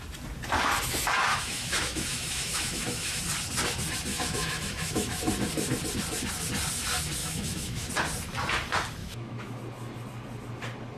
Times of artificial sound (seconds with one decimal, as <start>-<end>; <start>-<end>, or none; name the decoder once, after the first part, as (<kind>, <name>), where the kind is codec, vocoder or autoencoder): 1.3-3.2 (autoencoder, DAC-VAE); 4.1-5.3; 7.2-7.9; 9.0-9.6